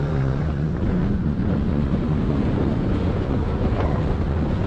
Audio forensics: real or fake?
fake